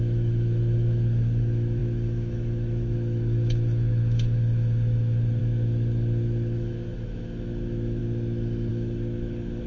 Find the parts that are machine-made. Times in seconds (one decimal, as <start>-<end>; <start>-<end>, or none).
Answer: 0.0-8.0; 8.7-9.7

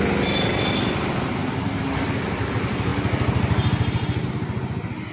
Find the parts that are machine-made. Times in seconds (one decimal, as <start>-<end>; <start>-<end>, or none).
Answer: none